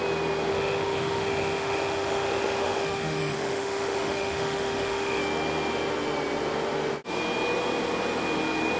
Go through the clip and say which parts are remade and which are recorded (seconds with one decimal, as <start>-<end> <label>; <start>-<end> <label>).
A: 0.0-0.5 recorded; 0.5-5.2 remade; 5.2-8.8 recorded